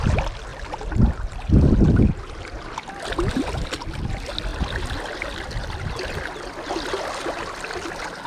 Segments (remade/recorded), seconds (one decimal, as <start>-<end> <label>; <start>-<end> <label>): 0.0-8.3 recorded